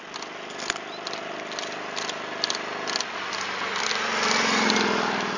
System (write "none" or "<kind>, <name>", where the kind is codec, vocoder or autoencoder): none